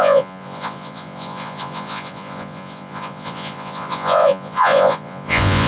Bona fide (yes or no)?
no